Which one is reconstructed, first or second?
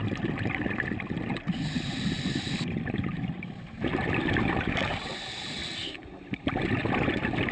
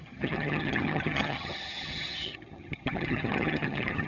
second